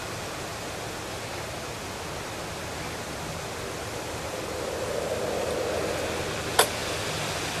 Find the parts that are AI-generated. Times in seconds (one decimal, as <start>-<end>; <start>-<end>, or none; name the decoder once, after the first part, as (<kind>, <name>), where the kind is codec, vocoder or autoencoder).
none